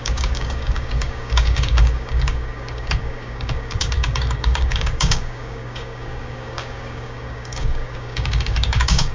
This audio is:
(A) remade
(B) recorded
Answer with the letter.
A